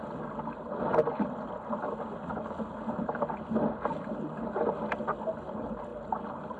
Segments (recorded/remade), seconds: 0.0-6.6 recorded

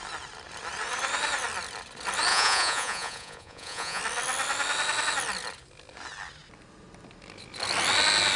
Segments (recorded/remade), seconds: 0.0-2.3 recorded; 2.3-4.0 remade; 4.0-8.4 recorded

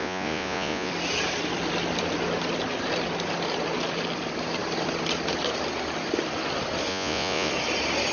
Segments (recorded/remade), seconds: 0.0-0.9 remade; 0.9-6.9 recorded; 6.9-7.5 remade; 7.5-8.1 recorded

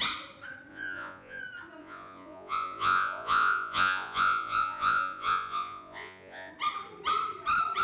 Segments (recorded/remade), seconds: 0.0-0.7 recorded; 0.7-1.4 remade; 1.4-1.8 recorded; 1.8-6.5 remade; 6.5-7.8 recorded

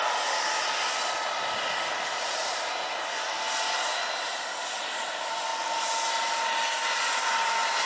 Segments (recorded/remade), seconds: 0.0-7.9 recorded